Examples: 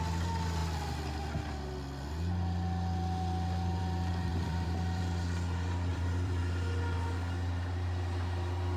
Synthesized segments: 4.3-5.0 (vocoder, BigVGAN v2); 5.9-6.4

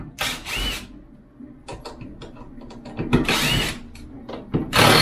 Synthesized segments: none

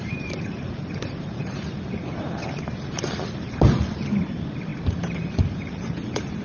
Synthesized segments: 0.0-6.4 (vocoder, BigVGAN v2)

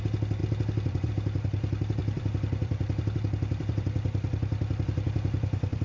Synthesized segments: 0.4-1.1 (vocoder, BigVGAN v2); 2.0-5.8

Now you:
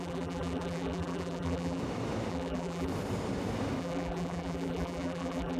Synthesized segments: 0.0-1.8 (vocoder, BigVGAN v2); 2.3-2.9; 3.8-5.6

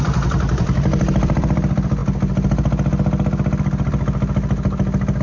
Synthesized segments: 0.0-2.0 (vocoder, BigVGAN v2)

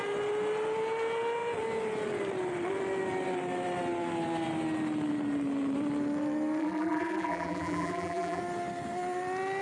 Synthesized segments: 6.6-8.4 (vocoder, BigVGAN v2)

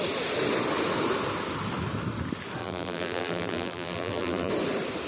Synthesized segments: 2.6-4.5 (vocoder, BigVGAN v2)